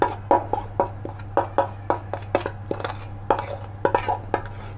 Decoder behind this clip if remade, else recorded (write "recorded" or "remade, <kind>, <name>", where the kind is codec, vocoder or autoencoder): recorded